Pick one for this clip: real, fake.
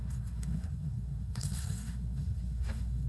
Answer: fake